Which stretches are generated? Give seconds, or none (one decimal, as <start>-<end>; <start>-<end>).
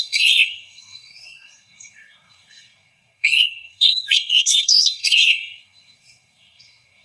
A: 0.0-7.0